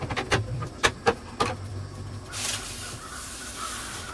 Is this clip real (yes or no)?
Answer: no